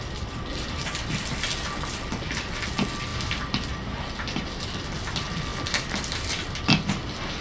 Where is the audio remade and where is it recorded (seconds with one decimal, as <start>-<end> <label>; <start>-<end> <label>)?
0.0-7.4 recorded